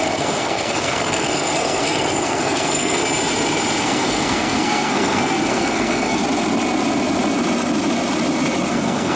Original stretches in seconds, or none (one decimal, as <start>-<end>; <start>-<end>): 3.0-3.8; 6.2-8.7